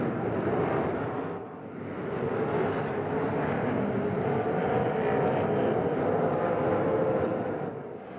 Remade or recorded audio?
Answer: recorded